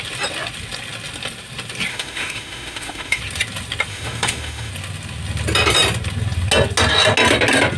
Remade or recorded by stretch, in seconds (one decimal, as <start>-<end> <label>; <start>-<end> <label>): 0.0-1.9 recorded; 1.9-3.2 remade; 3.2-3.9 recorded; 3.9-4.7 remade; 4.7-7.8 recorded